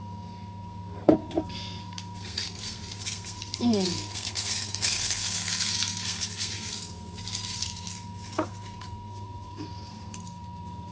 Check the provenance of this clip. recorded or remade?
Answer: remade